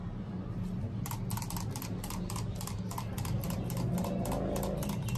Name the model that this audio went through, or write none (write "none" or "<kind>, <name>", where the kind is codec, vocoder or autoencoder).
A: none